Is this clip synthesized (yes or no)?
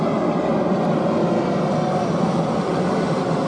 no